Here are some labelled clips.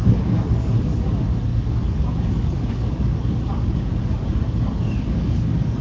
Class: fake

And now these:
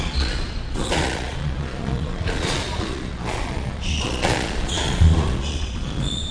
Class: fake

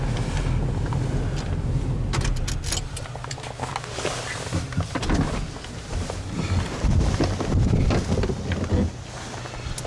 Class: real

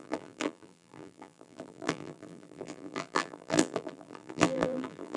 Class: fake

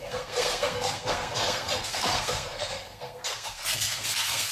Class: fake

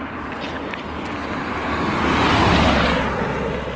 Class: real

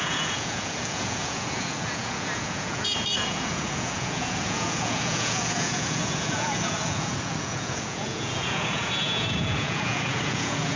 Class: fake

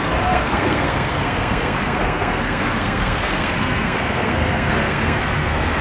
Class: fake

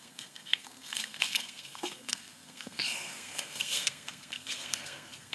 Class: fake